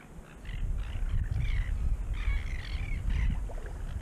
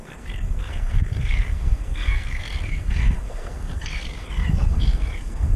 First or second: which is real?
first